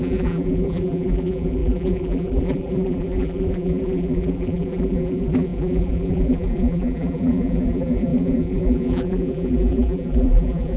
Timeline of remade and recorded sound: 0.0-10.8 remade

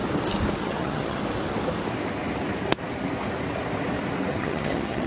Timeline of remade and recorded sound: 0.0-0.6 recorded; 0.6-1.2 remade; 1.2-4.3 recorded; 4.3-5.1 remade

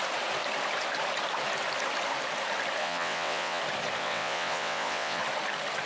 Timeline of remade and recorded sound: 0.0-2.8 recorded; 2.8-3.6 remade; 3.6-4.0 recorded; 4.0-5.2 remade; 5.2-5.9 recorded

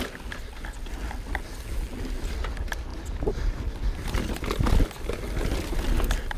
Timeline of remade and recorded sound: 0.0-6.4 recorded

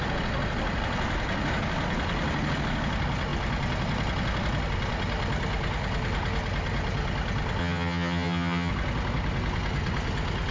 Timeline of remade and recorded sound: 0.0-7.6 recorded; 7.6-8.7 remade; 8.7-10.5 recorded

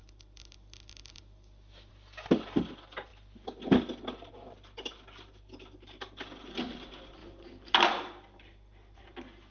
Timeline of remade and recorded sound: 0.0-9.5 recorded